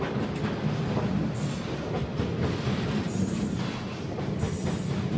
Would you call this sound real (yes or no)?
yes